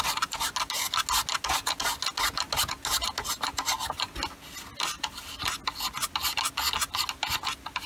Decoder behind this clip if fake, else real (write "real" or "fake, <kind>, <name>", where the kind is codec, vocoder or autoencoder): real